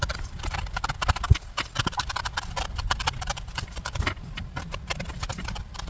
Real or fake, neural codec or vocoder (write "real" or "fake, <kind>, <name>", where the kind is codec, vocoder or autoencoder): real